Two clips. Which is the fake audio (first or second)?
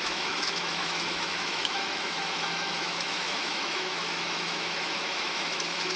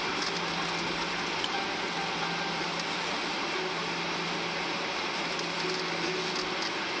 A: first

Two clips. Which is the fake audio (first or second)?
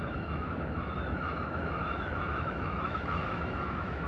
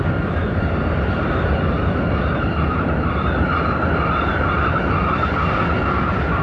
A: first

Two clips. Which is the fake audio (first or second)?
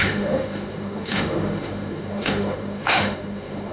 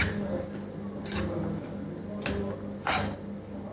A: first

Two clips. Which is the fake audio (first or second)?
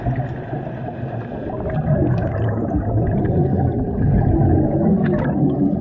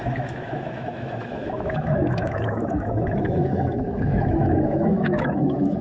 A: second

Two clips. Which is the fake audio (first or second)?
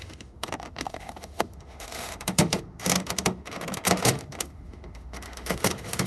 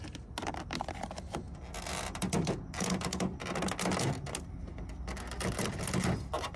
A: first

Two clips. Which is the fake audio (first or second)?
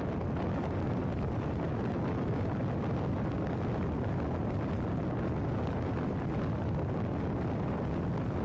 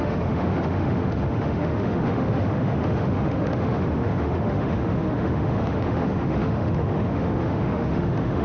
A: second